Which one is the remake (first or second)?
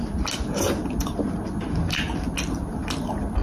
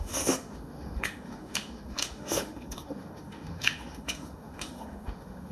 second